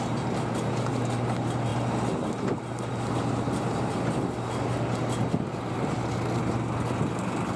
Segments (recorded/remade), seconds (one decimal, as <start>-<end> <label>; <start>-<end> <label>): 0.0-7.6 recorded